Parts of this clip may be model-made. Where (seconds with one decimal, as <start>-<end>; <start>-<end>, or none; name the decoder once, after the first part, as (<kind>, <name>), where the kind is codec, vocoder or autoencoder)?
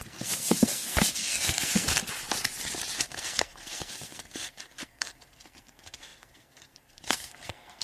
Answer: 0.0-2.0 (codec, SNAC); 3.0-7.8